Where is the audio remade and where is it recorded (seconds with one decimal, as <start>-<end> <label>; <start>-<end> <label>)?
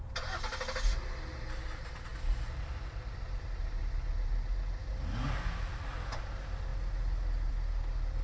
0.0-8.2 recorded